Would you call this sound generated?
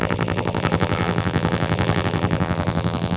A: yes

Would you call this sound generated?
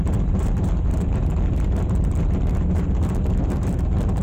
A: yes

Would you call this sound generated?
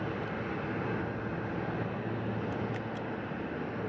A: no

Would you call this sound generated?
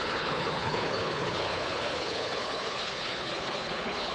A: yes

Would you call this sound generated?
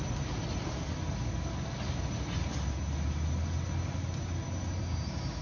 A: no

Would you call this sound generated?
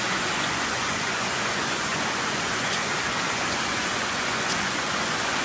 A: yes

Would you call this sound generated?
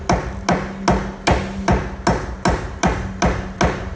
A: no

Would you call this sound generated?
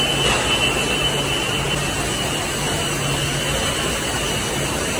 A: no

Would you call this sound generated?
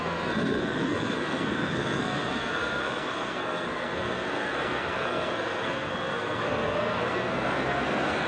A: yes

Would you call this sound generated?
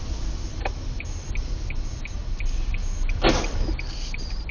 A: no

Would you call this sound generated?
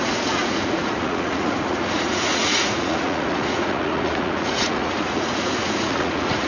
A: yes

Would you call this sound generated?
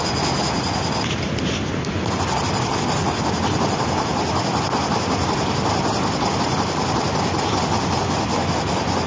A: no